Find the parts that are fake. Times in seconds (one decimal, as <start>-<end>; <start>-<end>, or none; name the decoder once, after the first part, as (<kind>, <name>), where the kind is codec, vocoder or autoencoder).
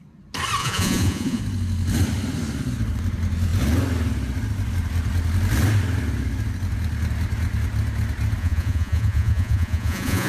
0.6-1.4 (vocoder, Vocos); 8.4-10.3